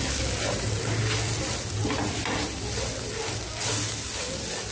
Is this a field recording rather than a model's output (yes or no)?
yes